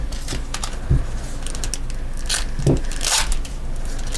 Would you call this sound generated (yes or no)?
no